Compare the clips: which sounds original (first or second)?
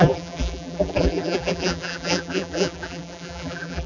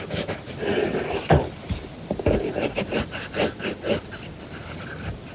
second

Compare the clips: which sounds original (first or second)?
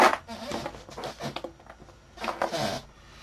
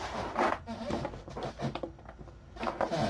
first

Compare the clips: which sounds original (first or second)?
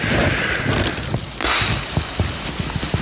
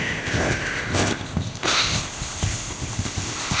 first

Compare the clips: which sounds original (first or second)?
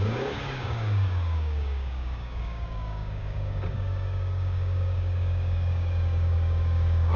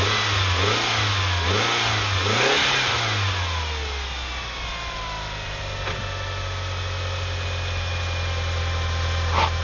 second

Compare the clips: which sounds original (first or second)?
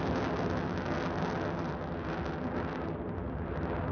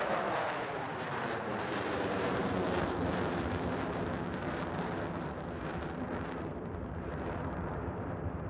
first